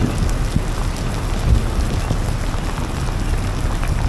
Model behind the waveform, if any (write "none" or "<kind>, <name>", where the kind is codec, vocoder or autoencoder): none